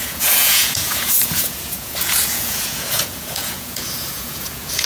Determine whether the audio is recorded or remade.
remade